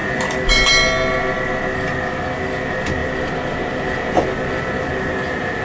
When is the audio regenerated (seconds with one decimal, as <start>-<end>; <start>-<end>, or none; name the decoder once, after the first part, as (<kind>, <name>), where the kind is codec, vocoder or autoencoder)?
none